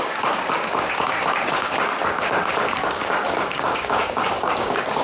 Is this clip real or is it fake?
fake